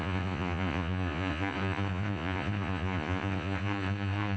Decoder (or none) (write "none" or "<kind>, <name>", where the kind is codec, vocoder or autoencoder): vocoder, Vocos